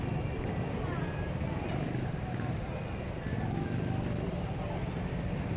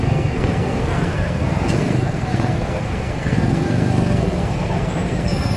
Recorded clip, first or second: first